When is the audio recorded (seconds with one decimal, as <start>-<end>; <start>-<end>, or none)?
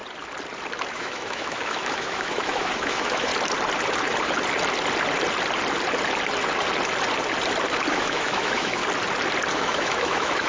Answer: 0.0-0.9; 3.3-7.9; 8.8-9.5